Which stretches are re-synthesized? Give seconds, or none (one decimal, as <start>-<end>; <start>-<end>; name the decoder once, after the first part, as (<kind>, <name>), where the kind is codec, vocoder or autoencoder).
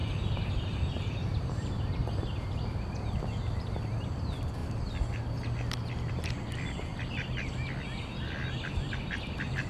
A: 0.0-4.6 (vocoder, BigVGAN v2); 6.1-6.9; 7.5-9.7